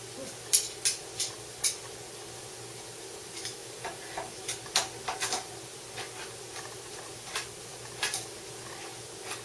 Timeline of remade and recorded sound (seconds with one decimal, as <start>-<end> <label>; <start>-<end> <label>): 0.0-3.6 recorded; 3.6-4.7 remade; 4.7-9.4 recorded

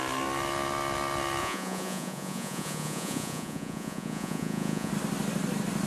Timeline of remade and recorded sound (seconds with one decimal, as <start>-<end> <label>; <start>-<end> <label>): 0.0-1.4 recorded; 1.4-4.9 remade; 4.9-5.9 recorded

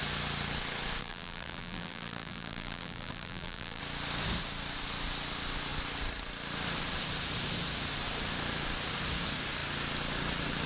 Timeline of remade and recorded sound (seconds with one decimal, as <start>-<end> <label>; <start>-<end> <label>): 0.0-1.0 recorded; 1.0-3.8 remade; 3.8-10.7 recorded

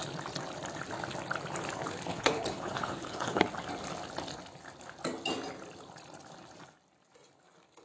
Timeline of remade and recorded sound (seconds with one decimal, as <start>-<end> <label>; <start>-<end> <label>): 0.0-2.1 recorded; 2.1-3.4 remade; 3.4-7.8 recorded

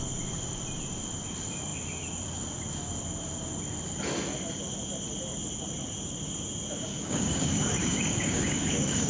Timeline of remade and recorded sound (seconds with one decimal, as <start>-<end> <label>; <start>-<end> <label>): 0.0-6.9 recorded; 6.9-9.1 remade

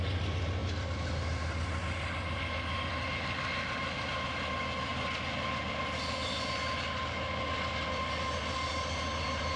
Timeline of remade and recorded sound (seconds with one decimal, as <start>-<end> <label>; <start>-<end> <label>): 0.0-9.6 recorded

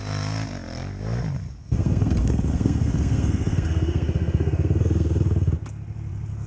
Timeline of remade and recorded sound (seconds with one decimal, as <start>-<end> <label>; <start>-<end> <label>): 0.0-1.6 recorded; 1.6-5.5 remade; 5.5-6.5 recorded

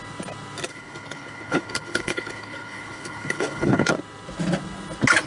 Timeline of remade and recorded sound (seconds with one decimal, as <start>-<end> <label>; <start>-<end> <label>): 0.0-0.7 recorded; 0.7-3.9 remade; 3.9-5.3 recorded